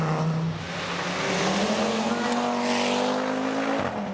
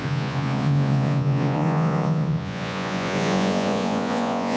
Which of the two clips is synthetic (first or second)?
second